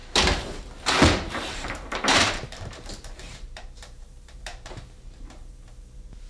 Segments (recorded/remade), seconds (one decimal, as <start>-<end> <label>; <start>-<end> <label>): 0.0-1.5 recorded; 1.5-6.3 remade